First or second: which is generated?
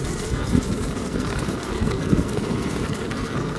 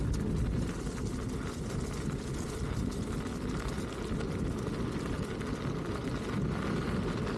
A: first